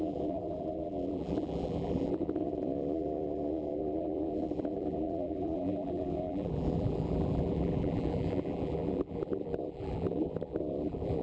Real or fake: fake